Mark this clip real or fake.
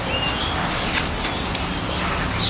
real